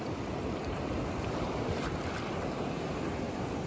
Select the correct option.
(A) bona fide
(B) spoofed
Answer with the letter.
A